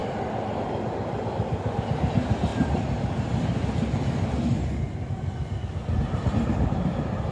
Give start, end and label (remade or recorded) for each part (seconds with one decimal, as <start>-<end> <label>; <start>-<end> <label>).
0.0-7.3 recorded